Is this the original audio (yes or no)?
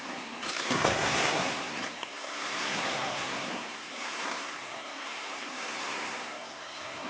no